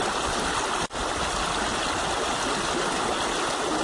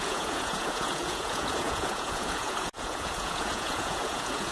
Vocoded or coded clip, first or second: second